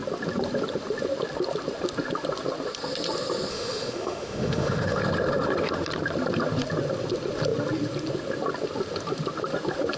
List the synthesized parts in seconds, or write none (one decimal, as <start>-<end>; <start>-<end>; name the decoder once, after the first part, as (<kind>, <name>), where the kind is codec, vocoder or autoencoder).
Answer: 3.5-5.0 (autoencoder, DAC-VAE)